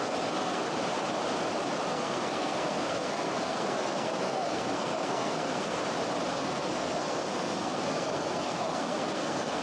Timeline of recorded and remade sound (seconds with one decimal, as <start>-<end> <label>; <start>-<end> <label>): 0.0-0.6 remade; 0.6-1.9 recorded; 1.9-5.8 remade; 5.8-6.3 recorded; 6.3-9.6 remade